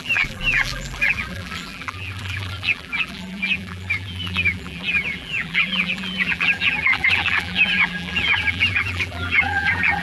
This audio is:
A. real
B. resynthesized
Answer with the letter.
B